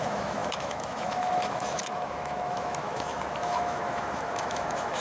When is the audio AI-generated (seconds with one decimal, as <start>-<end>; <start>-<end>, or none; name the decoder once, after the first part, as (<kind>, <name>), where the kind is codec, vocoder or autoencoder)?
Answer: 0.0-5.0 (autoencoder, DAC-VAE)